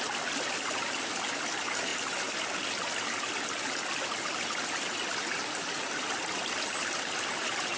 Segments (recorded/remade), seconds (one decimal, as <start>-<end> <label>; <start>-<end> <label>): 0.0-7.8 recorded